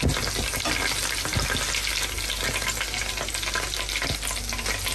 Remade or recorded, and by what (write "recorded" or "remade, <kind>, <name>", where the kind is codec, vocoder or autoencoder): recorded